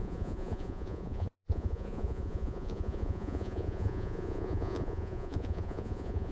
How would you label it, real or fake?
fake